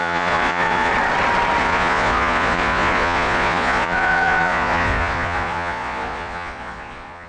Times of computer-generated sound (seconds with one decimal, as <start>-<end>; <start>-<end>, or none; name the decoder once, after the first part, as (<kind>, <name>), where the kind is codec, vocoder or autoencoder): 0.0-0.9 (vocoder, Vocos); 1.6-7.3

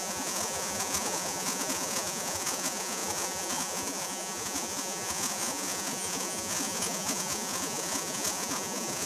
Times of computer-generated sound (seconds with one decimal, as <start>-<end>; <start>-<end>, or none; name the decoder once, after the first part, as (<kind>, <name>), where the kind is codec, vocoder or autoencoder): 0.0-9.1 (vocoder, Vocos)

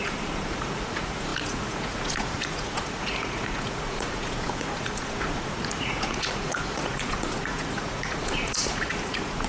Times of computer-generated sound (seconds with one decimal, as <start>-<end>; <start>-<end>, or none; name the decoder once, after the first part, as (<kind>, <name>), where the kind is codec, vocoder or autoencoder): 0.0-9.5 (vocoder, Vocos)